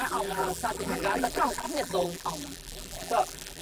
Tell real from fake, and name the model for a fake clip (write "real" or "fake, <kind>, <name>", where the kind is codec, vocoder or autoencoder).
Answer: fake, vocoder, BigVGAN v2